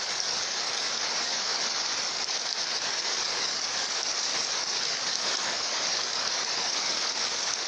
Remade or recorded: remade